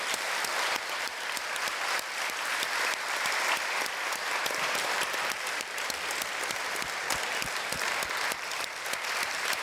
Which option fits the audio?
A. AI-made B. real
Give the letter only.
A